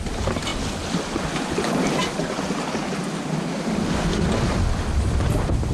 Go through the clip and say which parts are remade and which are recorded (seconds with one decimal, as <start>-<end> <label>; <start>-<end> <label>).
0.0-5.7 recorded